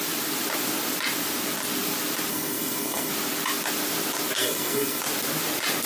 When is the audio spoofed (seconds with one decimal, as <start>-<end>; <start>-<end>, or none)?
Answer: 2.3-3.1; 4.4-5.0